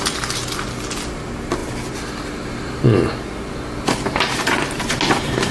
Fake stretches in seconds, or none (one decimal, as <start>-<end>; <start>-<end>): none